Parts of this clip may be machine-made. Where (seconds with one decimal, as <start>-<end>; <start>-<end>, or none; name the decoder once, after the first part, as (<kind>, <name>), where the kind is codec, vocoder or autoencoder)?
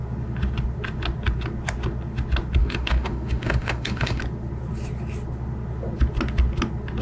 2.6-4.2 (autoencoder, DAC-VAE)